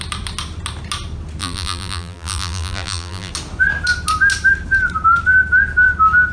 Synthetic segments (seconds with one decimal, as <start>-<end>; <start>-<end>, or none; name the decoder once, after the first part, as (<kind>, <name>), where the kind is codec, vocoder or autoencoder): 1.4-3.3 (vocoder, BigVGAN v2)